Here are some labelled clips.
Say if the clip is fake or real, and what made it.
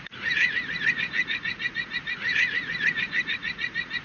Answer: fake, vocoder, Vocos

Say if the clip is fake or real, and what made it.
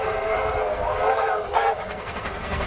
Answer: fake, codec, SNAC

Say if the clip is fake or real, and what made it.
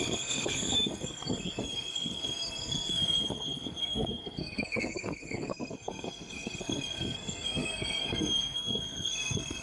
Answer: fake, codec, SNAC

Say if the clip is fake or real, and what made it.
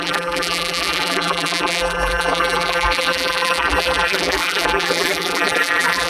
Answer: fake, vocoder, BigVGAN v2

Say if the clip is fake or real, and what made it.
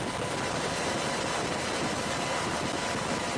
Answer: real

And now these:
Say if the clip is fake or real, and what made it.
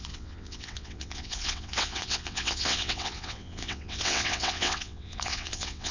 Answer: fake, vocoder, WaveNeXt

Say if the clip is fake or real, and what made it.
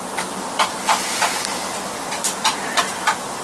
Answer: real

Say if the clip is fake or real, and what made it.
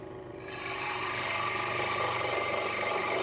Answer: fake, vocoder, BigVGAN v2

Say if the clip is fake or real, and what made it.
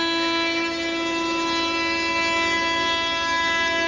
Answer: real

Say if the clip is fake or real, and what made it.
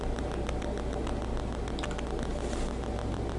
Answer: real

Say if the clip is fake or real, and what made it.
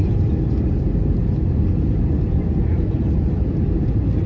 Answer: fake, vocoder, BigVGAN v2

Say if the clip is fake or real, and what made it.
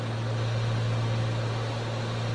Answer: real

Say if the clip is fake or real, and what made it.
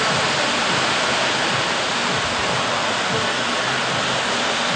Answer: real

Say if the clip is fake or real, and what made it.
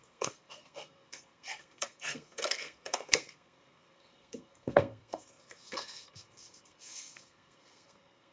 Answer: fake, codec, SNAC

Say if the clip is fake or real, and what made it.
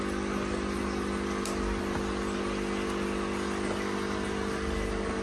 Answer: real